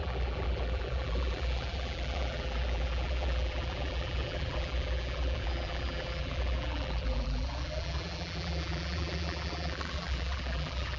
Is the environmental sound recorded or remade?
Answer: remade